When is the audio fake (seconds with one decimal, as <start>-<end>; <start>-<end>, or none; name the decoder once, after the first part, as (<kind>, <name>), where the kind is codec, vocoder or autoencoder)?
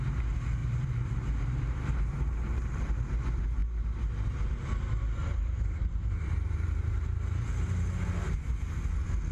0.6-3.2 (vocoder, BigVGAN v2); 5.2-8.8